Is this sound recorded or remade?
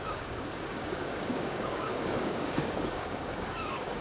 remade